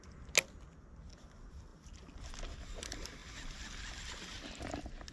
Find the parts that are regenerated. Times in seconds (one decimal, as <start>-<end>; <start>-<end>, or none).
none